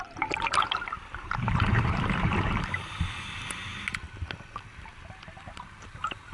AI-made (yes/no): yes